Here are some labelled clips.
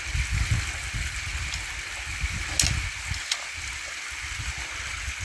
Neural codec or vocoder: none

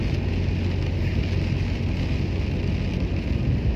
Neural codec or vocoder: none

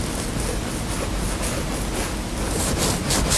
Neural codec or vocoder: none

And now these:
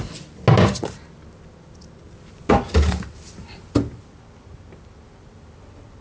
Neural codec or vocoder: none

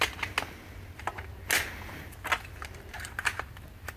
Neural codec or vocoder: none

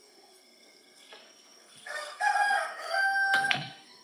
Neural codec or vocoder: codec, SNAC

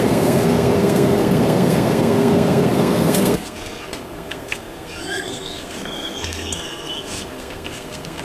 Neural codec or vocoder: codec, SNAC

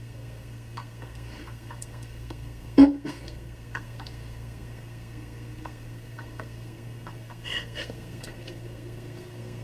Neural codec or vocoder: codec, SNAC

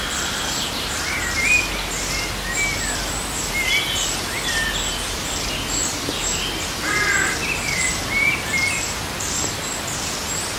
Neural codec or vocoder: none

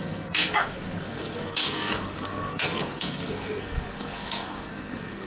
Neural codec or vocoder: codec, SNAC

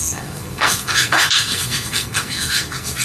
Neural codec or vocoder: codec, SNAC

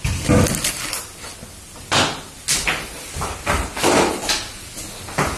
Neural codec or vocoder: none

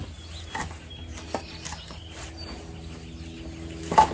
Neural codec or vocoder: none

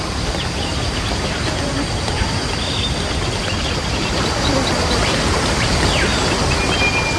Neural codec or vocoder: none